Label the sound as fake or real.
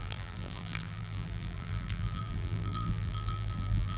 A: fake